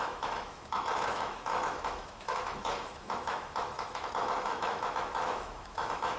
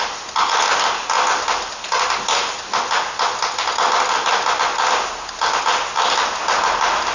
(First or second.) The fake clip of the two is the first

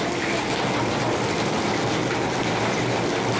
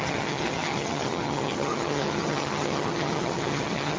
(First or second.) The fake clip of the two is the second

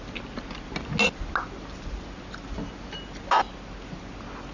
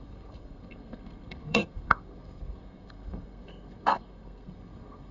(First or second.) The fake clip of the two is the second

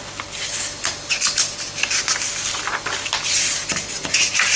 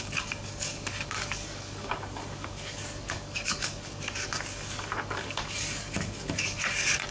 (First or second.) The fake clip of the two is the second